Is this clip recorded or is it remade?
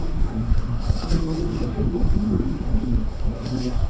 remade